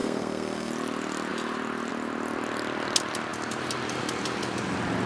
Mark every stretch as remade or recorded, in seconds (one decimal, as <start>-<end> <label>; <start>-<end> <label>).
0.0-0.7 remade; 0.7-5.1 recorded